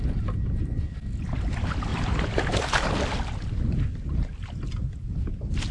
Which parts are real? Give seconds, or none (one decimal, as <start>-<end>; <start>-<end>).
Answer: 0.0-1.9; 5.3-5.7

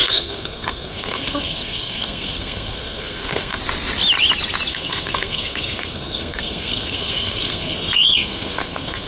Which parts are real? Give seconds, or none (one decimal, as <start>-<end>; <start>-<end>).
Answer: 3.6-4.7